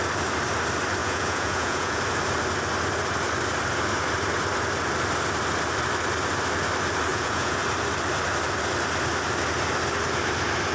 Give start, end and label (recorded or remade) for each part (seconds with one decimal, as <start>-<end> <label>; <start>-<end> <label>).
0.0-1.0 recorded; 1.0-2.0 remade; 2.0-7.1 recorded; 7.1-7.6 remade; 7.6-10.7 recorded